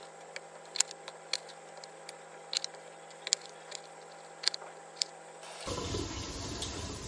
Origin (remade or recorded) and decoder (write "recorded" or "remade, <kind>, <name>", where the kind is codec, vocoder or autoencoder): recorded